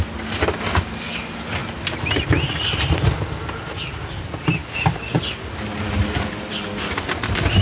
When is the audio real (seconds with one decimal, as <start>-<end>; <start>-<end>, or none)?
0.0-7.6

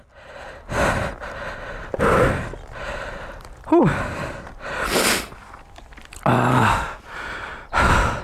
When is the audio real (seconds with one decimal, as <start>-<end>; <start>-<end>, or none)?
0.0-6.5; 7.0-8.2

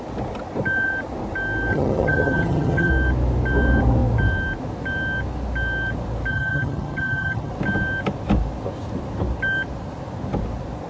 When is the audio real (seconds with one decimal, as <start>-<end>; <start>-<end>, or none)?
0.0-1.7; 2.9-6.3; 7.5-10.9

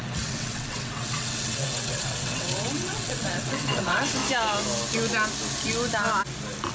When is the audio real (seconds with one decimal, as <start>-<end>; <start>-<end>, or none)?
4.2-6.7

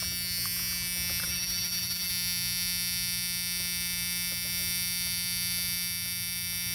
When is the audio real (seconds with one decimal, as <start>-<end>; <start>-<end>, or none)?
0.0-1.2; 2.1-6.7

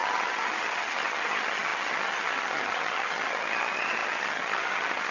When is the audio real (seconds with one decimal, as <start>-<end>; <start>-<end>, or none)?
none

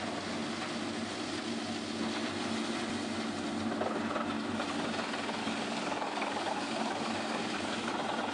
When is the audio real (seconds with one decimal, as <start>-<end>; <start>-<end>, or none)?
0.0-5.4; 7.9-8.3

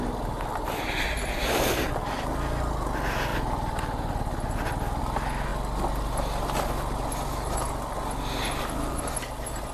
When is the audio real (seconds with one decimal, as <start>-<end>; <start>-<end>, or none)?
0.0-9.7